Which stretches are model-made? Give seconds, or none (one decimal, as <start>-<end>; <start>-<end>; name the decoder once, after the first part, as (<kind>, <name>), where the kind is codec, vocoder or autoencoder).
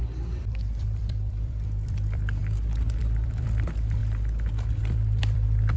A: 0.0-2.4 (vocoder, BigVGAN v2); 3.0-4.0; 4.8-5.8